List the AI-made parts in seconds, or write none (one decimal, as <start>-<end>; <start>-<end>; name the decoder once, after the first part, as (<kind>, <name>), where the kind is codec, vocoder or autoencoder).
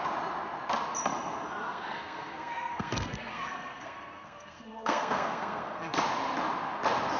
1.7-6.0 (codec, SNAC)